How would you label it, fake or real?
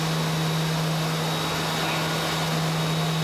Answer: real